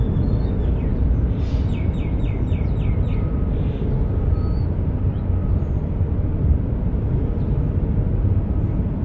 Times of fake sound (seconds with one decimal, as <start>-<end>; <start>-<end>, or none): 0.9-4.4; 5.4-7.1